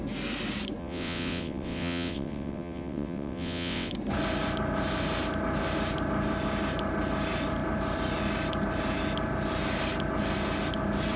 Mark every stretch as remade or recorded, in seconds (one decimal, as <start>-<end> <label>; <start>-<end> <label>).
0.0-0.8 recorded; 0.8-3.9 remade; 3.9-11.2 recorded